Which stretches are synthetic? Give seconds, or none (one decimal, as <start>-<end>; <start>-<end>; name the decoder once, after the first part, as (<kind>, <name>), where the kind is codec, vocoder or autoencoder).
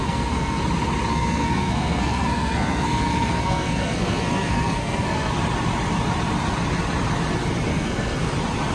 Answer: 0.0-0.6 (codec, SNAC); 1.1-5.3; 7.7-8.2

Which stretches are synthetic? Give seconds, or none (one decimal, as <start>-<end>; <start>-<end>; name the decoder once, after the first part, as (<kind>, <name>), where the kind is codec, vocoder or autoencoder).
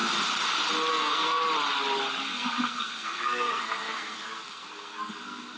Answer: 0.9-1.4 (codec, SNAC); 2.2-5.6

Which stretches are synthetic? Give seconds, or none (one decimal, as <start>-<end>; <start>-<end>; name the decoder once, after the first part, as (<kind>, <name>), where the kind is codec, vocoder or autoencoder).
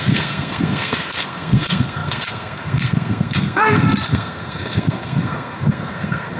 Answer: 0.0-6.4 (codec, SNAC)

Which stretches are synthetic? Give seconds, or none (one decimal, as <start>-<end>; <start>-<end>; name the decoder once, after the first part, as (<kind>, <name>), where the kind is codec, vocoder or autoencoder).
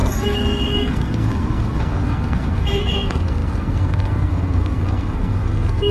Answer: 0.0-5.9 (codec, SNAC)